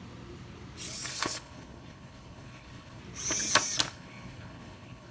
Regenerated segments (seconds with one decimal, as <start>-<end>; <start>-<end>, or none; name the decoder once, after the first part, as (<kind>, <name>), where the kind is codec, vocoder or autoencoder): 1.1-3.0 (codec, HILCodec); 3.9-5.1